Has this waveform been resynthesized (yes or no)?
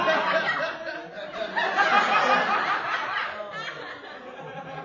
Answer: no